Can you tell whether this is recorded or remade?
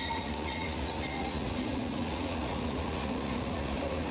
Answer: remade